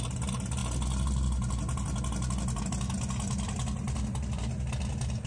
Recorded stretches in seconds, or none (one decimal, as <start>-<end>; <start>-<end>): 0.0-5.3